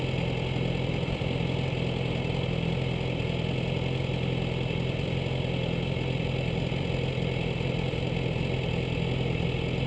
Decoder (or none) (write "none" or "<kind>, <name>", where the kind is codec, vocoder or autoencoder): none